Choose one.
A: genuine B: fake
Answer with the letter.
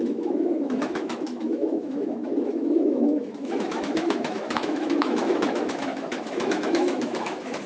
B